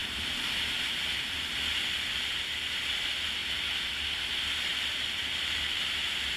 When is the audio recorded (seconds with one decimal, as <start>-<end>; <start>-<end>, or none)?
1.5-4.7; 5.8-6.4